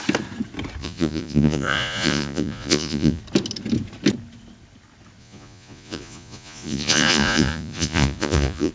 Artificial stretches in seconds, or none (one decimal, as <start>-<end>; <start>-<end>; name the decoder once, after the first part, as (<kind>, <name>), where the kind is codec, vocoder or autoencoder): 0.8-3.2 (vocoder, Vocos); 5.2-8.7